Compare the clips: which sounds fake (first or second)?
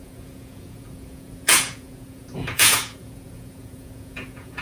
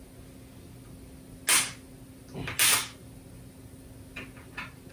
first